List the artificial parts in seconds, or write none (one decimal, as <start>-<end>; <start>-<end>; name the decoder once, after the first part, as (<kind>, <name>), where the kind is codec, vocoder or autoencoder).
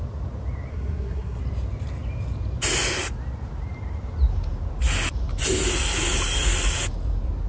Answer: 0.7-1.4 (codec, SNAC)